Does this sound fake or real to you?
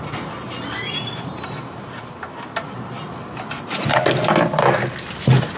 real